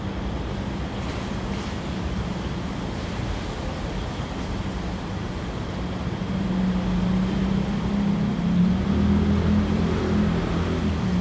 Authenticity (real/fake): real